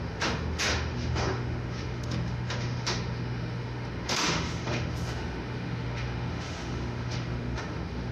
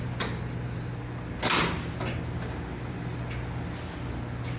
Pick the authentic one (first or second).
second